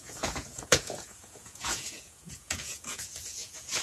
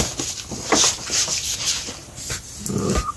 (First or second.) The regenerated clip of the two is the first